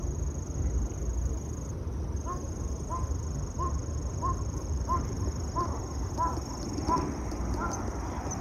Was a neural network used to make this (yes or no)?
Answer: no